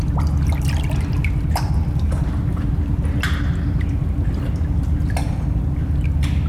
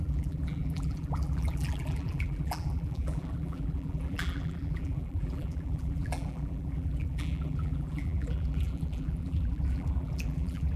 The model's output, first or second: second